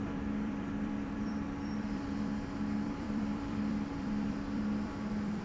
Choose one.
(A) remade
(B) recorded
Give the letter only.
A